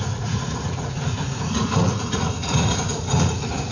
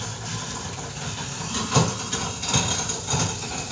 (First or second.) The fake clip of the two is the first